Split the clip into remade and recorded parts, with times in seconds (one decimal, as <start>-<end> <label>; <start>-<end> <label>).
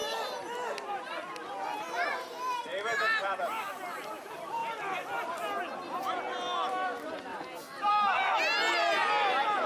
0.0-9.7 recorded